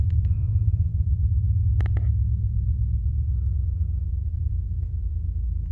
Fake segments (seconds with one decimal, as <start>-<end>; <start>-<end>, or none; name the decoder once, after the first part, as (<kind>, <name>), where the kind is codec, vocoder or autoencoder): 0.0-0.9 (vocoder, Vocos); 1.6-3.3; 4.1-5.1